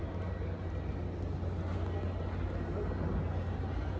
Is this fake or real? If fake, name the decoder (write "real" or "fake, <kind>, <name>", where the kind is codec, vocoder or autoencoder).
real